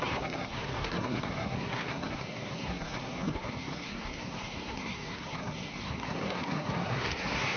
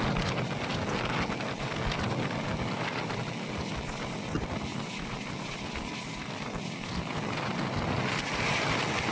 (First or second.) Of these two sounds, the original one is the second